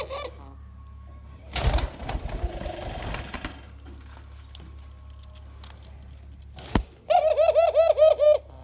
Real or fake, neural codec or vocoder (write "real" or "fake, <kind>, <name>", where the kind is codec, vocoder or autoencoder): real